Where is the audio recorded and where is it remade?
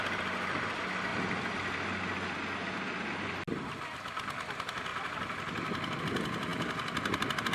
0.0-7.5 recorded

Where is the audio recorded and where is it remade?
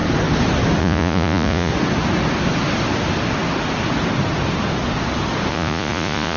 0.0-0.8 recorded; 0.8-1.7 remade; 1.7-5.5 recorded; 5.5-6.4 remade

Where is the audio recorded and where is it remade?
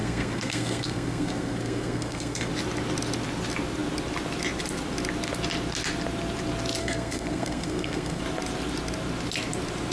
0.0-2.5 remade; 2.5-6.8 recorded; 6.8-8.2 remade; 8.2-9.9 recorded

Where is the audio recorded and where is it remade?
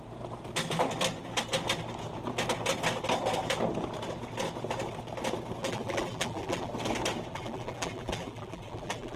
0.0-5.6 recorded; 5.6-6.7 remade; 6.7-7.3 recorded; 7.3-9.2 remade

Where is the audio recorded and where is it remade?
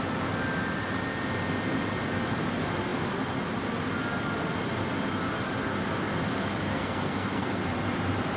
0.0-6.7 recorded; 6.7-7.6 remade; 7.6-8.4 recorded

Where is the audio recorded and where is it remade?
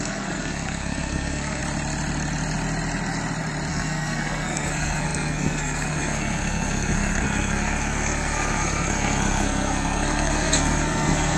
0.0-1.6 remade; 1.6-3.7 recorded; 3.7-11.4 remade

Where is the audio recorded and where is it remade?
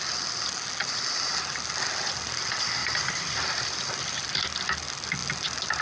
0.0-0.8 recorded; 0.8-1.3 remade; 1.3-2.8 recorded; 2.8-4.4 remade; 4.4-5.8 recorded